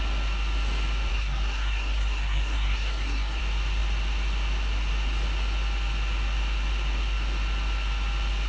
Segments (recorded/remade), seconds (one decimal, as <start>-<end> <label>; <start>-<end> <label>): 0.0-1.1 recorded; 1.1-3.4 remade; 3.4-8.5 recorded